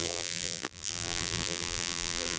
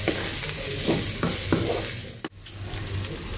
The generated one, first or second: first